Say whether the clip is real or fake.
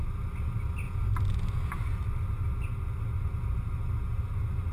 real